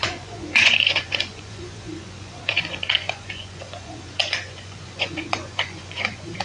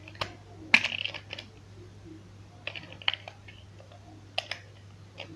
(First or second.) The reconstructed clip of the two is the first